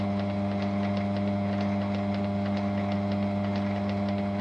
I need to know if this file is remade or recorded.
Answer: recorded